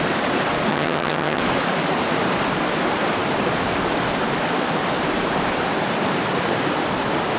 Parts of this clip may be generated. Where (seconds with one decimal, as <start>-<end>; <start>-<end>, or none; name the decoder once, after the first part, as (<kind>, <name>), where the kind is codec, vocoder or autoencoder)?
0.7-1.4 (vocoder, HiFi-GAN)